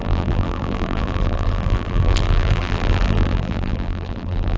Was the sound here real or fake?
fake